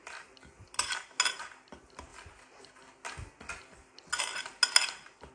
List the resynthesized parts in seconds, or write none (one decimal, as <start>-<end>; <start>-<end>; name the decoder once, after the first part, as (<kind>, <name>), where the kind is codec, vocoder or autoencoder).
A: none